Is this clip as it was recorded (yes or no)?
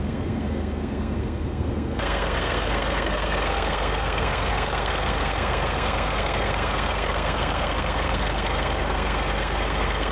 no